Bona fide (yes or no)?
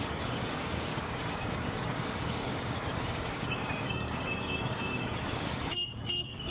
no